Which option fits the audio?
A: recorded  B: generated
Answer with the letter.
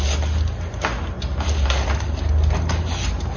A